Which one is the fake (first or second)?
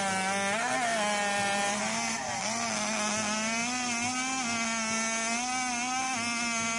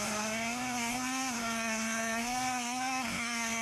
second